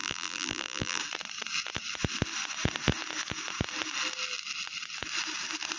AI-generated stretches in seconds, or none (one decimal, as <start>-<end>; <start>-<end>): 0.0-1.0